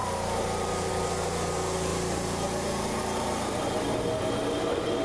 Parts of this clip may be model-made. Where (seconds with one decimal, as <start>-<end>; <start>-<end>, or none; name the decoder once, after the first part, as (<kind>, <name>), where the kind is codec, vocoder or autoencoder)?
0.0-0.9 (vocoder, BigVGAN v2); 1.9-3.6